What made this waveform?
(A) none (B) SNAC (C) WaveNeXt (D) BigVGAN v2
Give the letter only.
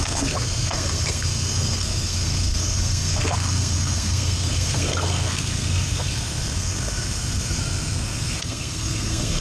B